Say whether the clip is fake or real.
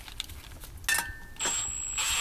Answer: real